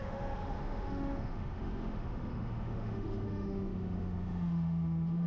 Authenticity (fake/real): fake